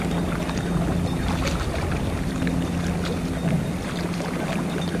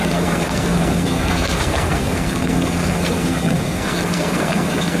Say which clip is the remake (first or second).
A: second